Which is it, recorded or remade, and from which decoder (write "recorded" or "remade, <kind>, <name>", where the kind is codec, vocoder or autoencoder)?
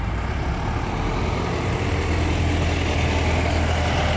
recorded